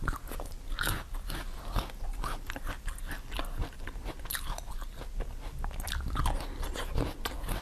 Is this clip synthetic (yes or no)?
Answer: no